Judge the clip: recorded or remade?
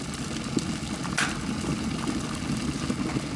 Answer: recorded